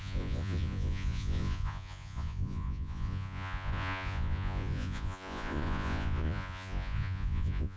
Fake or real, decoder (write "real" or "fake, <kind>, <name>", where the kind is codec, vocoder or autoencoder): fake, vocoder, Vocos